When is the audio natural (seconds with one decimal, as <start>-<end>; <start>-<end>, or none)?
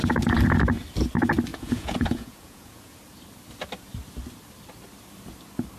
0.0-1.5; 3.0-5.8